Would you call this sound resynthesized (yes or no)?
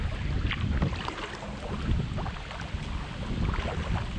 no